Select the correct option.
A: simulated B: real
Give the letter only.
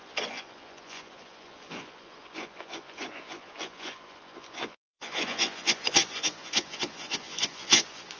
A